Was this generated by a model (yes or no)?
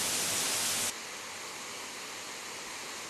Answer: no